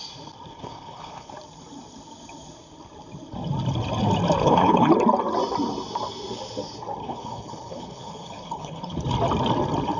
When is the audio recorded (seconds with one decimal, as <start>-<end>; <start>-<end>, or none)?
0.0-0.5; 1.3-4.4; 4.9-7.0; 9.0-10.0